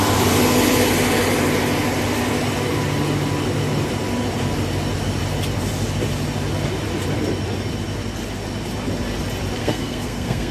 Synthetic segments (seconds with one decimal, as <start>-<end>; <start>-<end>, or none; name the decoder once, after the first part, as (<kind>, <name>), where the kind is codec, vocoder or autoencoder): 9.6-10.5 (codec, SNAC)